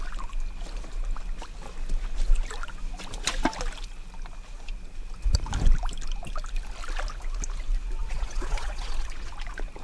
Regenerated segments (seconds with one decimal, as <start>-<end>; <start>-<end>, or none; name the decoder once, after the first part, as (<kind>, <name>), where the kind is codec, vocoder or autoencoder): 8.0-9.3 (vocoder, Vocos)